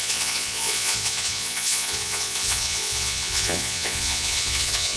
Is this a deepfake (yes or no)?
yes